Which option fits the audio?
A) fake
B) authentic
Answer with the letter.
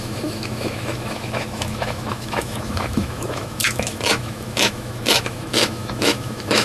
A